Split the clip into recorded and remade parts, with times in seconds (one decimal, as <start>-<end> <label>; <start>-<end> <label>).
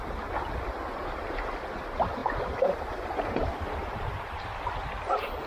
0.0-2.2 recorded; 2.2-4.4 remade; 4.4-5.5 recorded